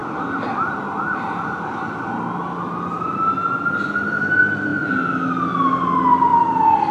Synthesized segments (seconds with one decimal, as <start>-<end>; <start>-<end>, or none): none

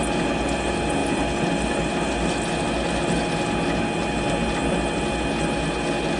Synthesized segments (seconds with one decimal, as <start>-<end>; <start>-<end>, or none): none

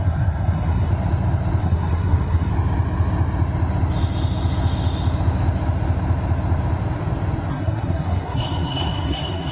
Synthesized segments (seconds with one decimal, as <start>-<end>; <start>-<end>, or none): 0.0-0.9; 1.6-2.5; 7.5-9.5

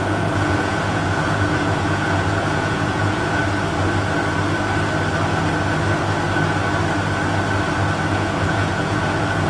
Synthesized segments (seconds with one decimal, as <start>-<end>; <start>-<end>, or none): 0.0-3.4; 8.1-9.5